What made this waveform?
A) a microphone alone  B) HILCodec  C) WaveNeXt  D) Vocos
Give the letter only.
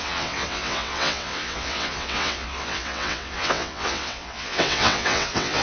C